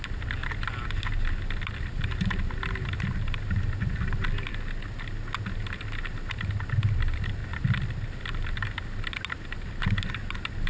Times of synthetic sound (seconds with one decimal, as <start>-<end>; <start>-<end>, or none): none

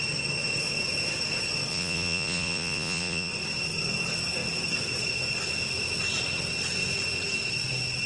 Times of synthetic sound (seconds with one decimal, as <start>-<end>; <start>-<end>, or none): 1.7-3.3

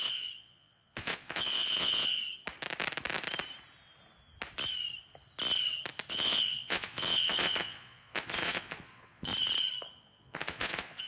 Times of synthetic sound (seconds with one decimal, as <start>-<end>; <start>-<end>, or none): 0.0-2.2; 6.1-9.3; 10.0-11.1